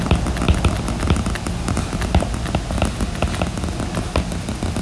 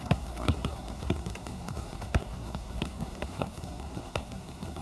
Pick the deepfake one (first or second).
second